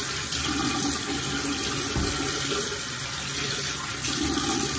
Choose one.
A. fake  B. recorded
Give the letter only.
B